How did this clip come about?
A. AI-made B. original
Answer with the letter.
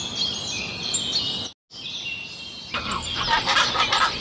B